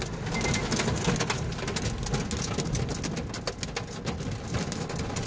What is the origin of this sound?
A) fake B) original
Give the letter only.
B